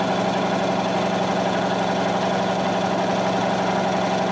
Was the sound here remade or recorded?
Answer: recorded